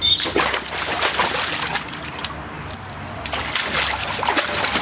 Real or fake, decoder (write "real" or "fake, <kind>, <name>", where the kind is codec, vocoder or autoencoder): real